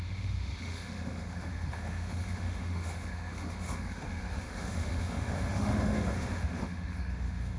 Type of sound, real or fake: fake